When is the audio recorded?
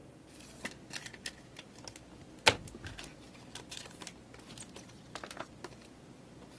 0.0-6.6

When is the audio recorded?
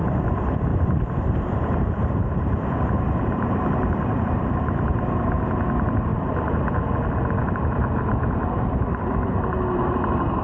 0.0-0.7; 5.3-6.1; 6.7-7.4; 8.8-10.4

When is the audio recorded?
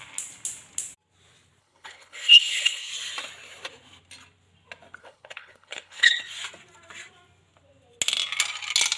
0.0-1.6; 2.9-5.0; 6.2-9.0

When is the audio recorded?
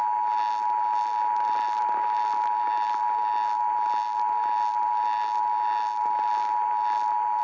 0.0-7.4